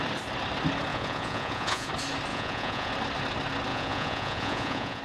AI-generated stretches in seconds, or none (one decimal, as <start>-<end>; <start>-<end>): 0.9-1.9; 2.3-2.9; 3.7-5.0